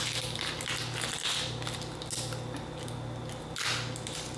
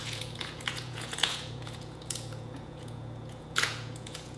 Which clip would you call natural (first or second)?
first